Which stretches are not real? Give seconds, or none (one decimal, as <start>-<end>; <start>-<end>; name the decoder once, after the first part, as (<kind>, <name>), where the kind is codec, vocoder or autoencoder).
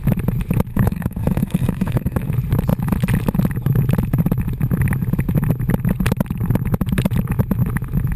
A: 0.7-2.3 (codec, SNAC)